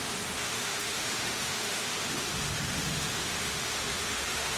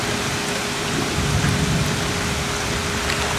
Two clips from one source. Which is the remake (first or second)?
first